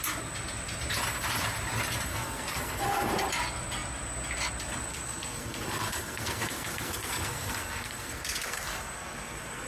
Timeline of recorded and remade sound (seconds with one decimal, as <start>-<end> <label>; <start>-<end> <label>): 0.0-2.1 recorded; 2.1-3.1 remade; 3.1-4.9 recorded; 4.9-9.7 remade